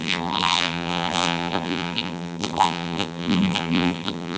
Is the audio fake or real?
fake